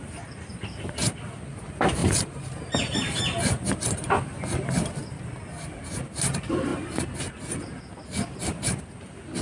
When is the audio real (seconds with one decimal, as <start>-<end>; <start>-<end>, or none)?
0.0-2.0; 3.7-9.4